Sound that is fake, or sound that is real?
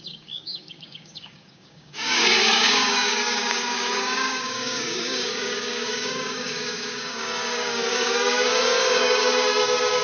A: fake